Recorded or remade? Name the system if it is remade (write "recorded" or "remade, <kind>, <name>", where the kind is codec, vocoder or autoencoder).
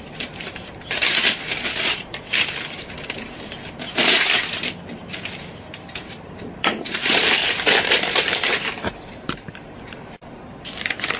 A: remade, vocoder, BigVGAN v2